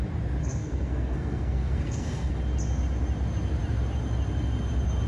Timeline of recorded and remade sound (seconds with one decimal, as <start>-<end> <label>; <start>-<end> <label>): 0.0-0.4 recorded; 0.4-2.3 remade; 2.3-5.1 recorded